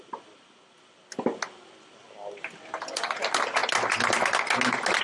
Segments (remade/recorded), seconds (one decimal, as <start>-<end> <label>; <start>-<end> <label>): 0.0-5.0 recorded